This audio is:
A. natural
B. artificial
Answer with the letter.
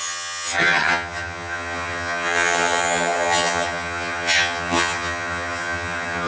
B